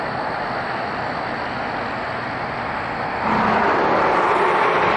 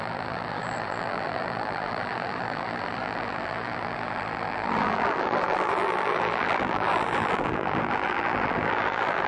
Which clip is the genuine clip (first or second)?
first